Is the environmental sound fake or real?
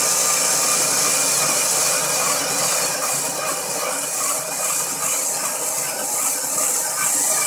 real